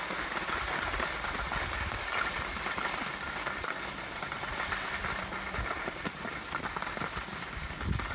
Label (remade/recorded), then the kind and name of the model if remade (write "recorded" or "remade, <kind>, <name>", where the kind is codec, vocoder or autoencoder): recorded